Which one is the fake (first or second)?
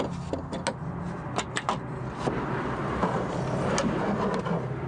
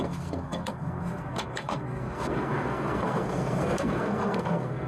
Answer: second